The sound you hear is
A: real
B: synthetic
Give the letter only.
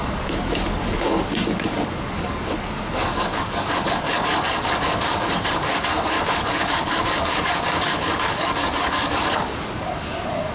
B